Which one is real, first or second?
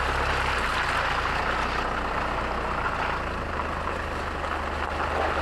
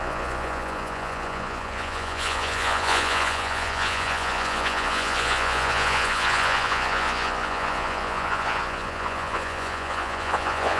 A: first